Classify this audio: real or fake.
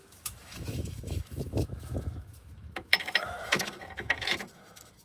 fake